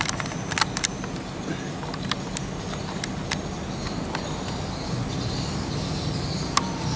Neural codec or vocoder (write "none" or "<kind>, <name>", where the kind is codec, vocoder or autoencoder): none